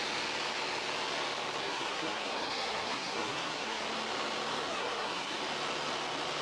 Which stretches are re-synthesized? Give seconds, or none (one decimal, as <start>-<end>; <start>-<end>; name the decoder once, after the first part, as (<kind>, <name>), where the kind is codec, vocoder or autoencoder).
1.6-3.8 (codec, SNAC); 4.7-5.4